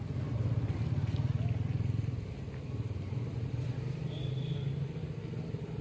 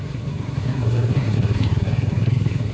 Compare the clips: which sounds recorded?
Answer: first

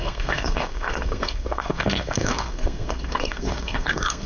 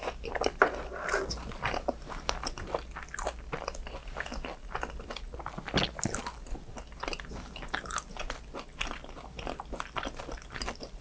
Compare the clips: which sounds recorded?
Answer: second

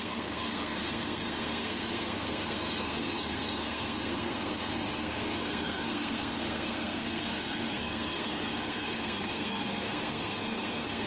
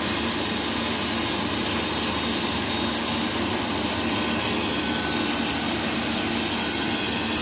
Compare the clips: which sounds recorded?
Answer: second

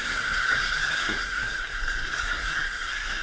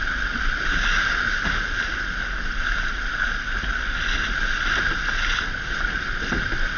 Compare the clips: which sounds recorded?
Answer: second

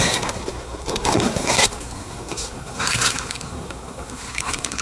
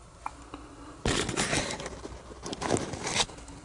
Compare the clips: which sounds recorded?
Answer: second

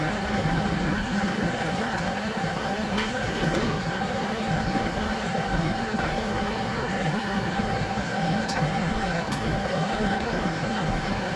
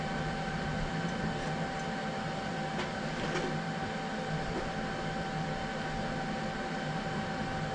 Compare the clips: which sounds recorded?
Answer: second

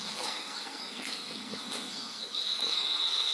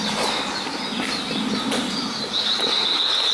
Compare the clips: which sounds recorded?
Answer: second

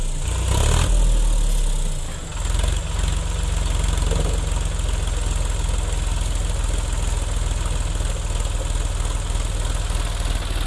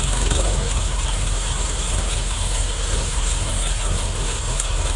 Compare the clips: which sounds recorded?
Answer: first